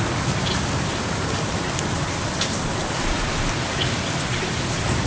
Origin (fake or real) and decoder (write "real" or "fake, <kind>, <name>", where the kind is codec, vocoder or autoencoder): real